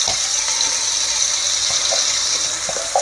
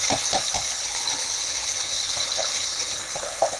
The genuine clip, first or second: first